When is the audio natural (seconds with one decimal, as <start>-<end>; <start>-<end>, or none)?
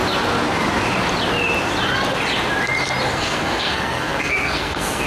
0.0-3.1